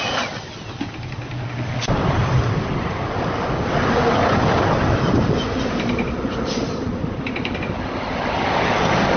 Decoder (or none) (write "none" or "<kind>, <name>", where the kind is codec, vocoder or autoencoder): none